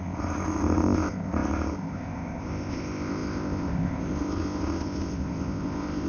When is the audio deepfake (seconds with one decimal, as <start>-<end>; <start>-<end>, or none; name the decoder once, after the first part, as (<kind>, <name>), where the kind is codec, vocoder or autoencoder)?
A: 0.0-6.1 (codec, ZipCodec)

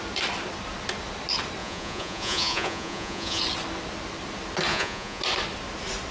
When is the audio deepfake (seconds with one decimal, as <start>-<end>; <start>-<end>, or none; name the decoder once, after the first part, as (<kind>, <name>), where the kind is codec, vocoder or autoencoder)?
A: 1.6-3.4 (vocoder, Vocos); 4.7-5.2

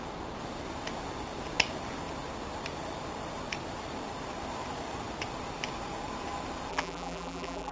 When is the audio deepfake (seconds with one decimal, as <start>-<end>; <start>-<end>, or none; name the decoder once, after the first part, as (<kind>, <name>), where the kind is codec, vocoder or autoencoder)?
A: 6.7-7.7 (vocoder, BigVGAN v2)

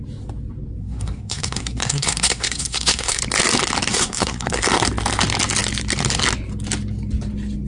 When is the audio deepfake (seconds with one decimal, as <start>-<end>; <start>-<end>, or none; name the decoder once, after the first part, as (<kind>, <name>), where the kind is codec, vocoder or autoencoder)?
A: 0.8-3.2 (codec, SNAC); 3.9-4.6

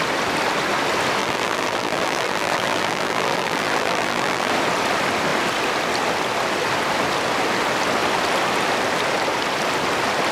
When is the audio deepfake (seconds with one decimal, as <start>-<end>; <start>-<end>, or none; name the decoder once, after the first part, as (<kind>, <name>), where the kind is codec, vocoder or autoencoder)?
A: 1.2-4.5 (vocoder, BigVGAN v2)

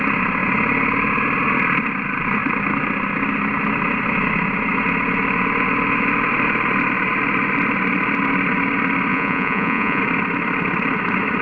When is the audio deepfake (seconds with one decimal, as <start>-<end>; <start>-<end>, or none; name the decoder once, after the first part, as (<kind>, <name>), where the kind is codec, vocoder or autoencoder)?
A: 9.1-10.0 (vocoder, Vocos)

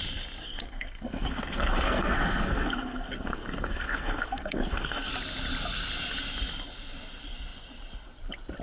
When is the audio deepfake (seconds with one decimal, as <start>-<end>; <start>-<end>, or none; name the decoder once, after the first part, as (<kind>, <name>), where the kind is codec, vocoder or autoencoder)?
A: 0.4-5.1 (codec, SNAC)